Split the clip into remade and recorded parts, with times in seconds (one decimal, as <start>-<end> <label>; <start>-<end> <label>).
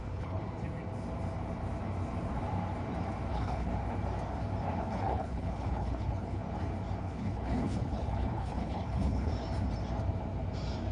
0.0-0.4 remade; 0.4-3.3 recorded; 3.3-3.7 remade; 3.7-4.8 recorded; 4.8-6.4 remade; 6.4-7.0 recorded; 7.0-9.3 remade; 9.3-10.9 recorded